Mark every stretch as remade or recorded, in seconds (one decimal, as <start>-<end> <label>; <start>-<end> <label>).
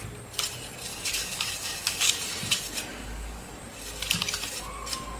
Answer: 0.0-0.9 recorded; 0.9-2.1 remade; 2.1-2.9 recorded; 2.9-3.5 remade; 3.5-5.2 recorded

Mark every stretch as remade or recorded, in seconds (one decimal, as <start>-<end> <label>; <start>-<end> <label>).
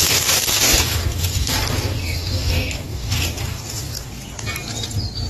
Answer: 0.0-4.2 remade; 4.2-5.3 recorded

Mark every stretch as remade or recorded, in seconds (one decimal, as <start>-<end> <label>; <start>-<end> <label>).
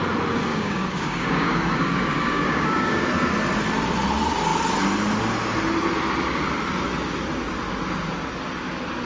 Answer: 0.0-0.5 recorded; 0.5-3.0 remade; 3.0-9.1 recorded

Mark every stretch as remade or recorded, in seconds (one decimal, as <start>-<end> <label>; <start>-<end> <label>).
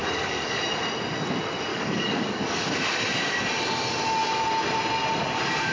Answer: 0.0-0.6 remade; 0.6-1.7 recorded; 1.7-2.7 remade; 2.7-5.7 recorded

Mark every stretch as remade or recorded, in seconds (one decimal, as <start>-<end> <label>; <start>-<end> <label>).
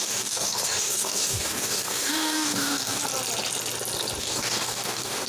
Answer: 0.0-3.0 remade; 3.0-4.2 recorded; 4.2-5.3 remade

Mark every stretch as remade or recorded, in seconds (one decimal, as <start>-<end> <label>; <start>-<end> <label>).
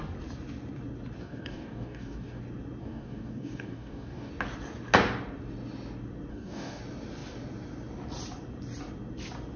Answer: 0.0-1.2 recorded; 1.2-2.4 remade; 2.4-2.8 recorded; 2.8-4.3 remade; 4.3-6.3 recorded; 6.3-6.8 remade; 6.8-9.6 recorded